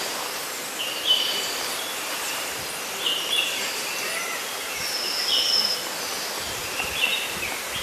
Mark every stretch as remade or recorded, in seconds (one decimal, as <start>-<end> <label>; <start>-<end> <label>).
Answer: 0.0-5.8 remade; 5.8-6.4 recorded; 6.4-7.8 remade